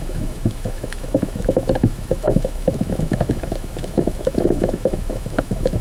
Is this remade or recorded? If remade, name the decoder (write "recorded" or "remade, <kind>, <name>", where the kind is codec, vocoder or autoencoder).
remade, autoencoder, DAC-VAE